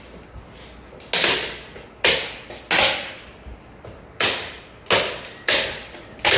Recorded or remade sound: recorded